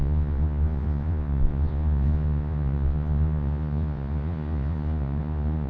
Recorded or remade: remade